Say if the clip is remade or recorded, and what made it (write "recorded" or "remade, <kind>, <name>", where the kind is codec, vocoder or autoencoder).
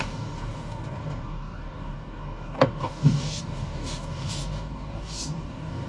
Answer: remade, codec, DAC